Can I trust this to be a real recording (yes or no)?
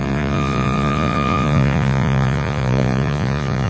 no